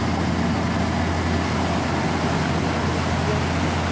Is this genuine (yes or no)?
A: yes